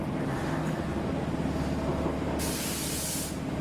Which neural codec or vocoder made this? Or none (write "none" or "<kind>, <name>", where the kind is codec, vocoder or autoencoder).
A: none